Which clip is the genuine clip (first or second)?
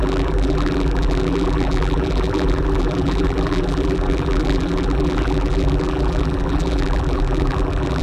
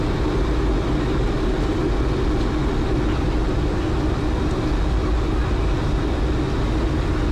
second